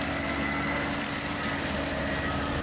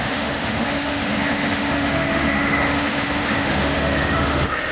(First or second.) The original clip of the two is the first